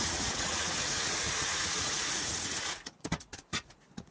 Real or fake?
fake